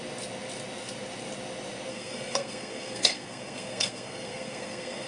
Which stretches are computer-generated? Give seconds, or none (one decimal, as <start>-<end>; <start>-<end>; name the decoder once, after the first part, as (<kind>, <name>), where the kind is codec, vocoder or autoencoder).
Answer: 1.9-5.1 (codec, SNAC)